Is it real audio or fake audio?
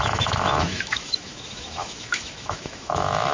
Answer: fake